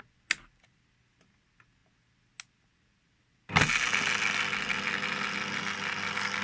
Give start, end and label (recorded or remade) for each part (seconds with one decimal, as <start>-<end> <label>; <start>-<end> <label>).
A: 0.0-6.4 recorded